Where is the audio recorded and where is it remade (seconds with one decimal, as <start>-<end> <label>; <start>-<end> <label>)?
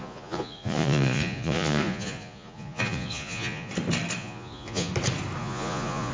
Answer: 0.0-3.7 remade; 3.7-4.2 recorded; 4.2-4.9 remade; 4.9-5.4 recorded; 5.4-6.1 remade